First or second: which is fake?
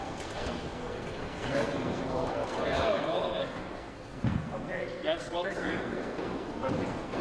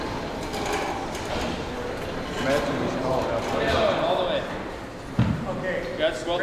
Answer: first